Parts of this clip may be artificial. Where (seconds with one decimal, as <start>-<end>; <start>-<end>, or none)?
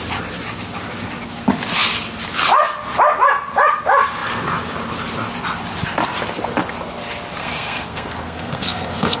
7.4-9.2